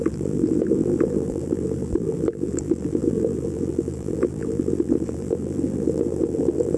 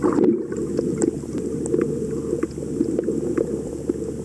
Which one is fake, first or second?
first